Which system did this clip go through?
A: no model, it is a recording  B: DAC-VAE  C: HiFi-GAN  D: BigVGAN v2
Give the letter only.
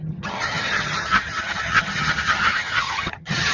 C